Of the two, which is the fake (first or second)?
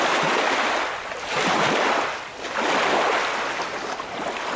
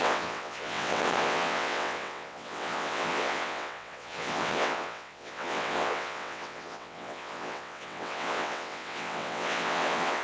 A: second